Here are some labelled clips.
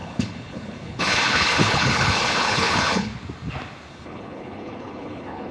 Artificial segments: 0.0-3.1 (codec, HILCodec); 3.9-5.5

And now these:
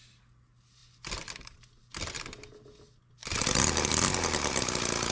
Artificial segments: none